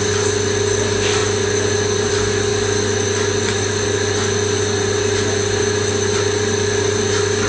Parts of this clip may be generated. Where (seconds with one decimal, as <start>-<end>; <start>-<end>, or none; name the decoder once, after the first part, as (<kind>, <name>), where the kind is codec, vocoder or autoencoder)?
none